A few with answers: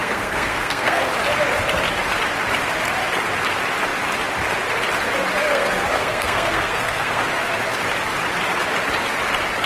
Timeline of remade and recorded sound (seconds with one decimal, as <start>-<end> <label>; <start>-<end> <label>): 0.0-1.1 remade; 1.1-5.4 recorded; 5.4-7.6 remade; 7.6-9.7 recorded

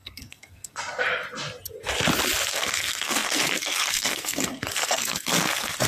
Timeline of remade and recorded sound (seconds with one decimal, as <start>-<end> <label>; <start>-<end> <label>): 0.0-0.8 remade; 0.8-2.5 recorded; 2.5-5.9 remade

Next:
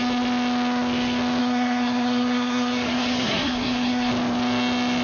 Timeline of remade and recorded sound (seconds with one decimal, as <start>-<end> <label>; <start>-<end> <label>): 0.0-1.4 recorded; 1.4-4.1 remade; 4.1-5.0 recorded